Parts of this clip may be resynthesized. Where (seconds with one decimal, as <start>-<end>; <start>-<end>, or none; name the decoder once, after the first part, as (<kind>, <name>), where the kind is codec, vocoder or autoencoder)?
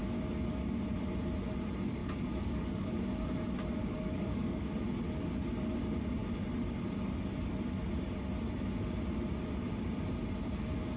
2.0-3.0 (codec, DAC); 3.8-4.7